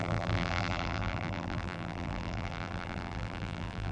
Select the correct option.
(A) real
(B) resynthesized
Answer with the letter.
B